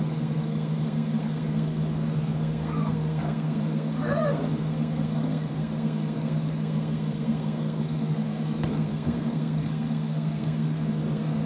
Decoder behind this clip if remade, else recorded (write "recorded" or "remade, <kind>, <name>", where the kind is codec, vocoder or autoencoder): remade, codec, SNAC